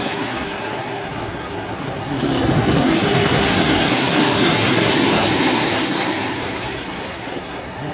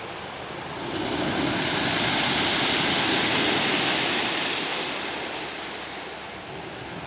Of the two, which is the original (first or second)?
second